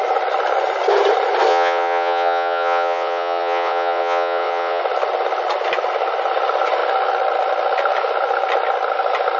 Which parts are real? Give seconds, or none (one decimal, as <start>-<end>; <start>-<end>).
0.0-1.5; 4.8-9.4

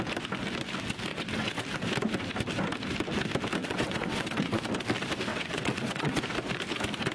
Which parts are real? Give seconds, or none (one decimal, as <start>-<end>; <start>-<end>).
0.0-1.1; 1.6-3.6; 4.6-5.3; 6.2-7.1